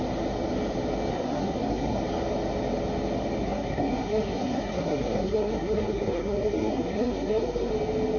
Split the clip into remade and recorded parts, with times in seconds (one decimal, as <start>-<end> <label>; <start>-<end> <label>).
0.0-1.1 recorded; 1.1-2.0 remade; 2.0-3.4 recorded; 3.4-7.7 remade; 7.7-8.2 recorded